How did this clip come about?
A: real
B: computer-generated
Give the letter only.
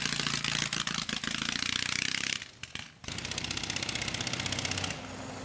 A